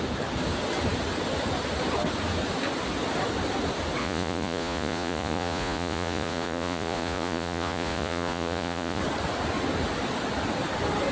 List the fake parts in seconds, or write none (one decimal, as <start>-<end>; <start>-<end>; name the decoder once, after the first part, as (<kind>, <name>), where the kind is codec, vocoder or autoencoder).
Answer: 4.0-9.0 (vocoder, Vocos)